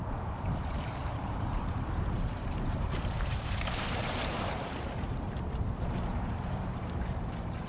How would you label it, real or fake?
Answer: fake